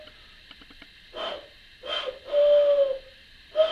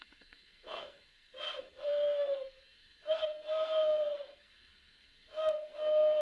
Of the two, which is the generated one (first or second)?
second